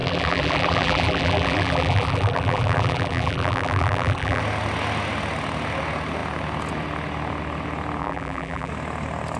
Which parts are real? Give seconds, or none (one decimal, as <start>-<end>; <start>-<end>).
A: 4.4-8.0; 8.7-9.4